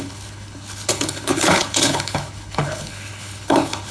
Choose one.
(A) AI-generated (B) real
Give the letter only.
A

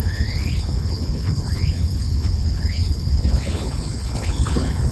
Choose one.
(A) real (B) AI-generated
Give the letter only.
B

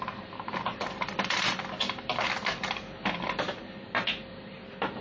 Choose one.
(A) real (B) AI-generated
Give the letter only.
A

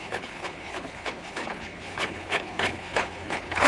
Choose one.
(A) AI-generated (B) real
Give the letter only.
A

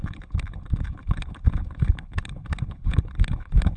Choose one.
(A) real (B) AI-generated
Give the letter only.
B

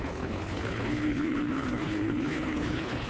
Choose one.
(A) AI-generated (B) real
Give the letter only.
A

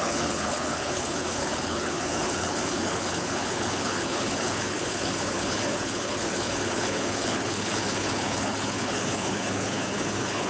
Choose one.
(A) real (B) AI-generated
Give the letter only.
B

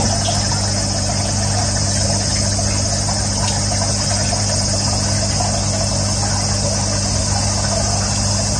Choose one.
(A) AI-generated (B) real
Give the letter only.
B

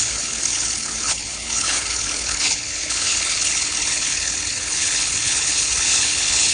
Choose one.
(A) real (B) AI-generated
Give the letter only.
B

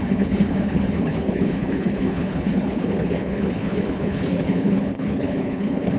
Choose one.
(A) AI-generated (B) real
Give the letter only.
A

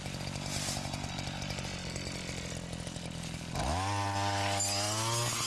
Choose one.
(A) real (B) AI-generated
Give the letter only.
A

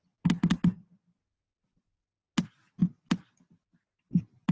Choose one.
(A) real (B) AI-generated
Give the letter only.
A